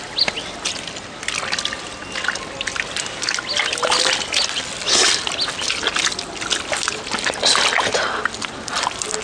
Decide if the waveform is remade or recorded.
recorded